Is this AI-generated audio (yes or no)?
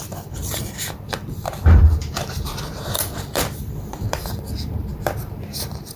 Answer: yes